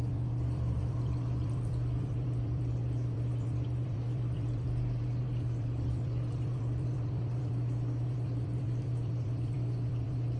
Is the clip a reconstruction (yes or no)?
yes